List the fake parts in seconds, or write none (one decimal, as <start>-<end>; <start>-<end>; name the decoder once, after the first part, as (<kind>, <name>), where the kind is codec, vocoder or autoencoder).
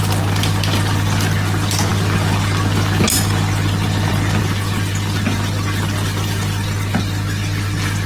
none